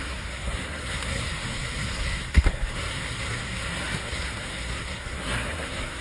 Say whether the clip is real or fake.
fake